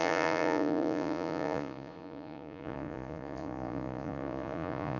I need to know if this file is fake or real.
fake